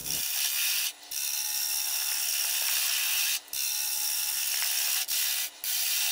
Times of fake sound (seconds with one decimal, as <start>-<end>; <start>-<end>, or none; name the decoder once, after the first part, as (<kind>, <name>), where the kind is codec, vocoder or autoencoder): none